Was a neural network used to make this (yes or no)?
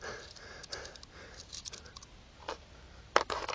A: no